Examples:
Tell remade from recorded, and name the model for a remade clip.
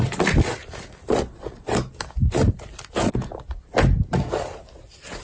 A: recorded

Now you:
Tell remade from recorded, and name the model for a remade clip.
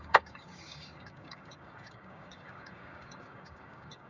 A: remade, codec, DAC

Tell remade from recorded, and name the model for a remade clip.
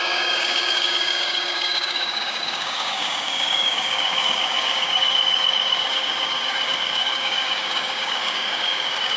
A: remade, codec, DAC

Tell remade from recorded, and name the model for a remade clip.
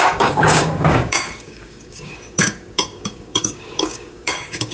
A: remade, codec, DAC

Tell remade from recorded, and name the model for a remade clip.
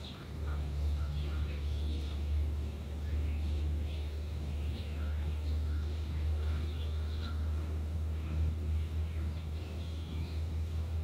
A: remade, codec, DAC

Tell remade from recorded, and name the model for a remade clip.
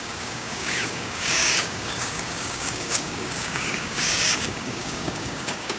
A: remade, codec, DAC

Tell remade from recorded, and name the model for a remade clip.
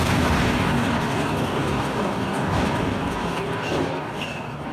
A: remade, codec, DAC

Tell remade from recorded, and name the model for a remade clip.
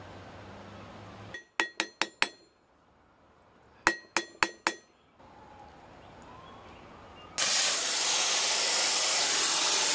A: recorded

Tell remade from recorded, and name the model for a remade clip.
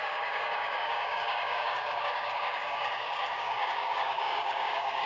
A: remade, codec, DAC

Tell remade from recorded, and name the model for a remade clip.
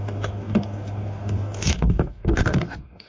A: remade, codec, DAC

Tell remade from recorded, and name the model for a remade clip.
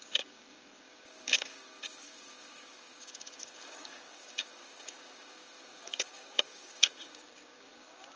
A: remade, codec, DAC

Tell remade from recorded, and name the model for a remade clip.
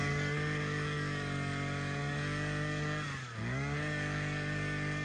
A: remade, codec, DAC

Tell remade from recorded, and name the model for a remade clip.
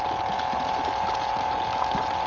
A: recorded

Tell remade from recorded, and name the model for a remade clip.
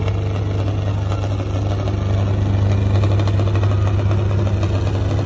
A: recorded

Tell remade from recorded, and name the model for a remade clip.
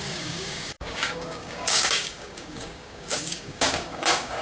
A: remade, codec, DAC